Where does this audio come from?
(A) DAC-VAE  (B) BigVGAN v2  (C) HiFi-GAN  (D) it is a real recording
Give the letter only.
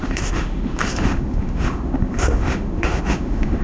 A